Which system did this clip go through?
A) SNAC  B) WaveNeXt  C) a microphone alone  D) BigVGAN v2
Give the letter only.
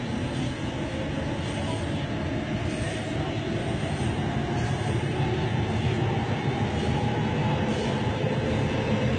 C